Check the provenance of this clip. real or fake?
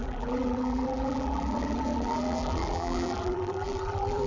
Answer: fake